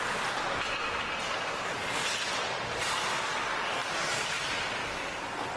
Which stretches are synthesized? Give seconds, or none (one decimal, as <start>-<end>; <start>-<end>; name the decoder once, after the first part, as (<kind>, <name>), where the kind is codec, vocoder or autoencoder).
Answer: none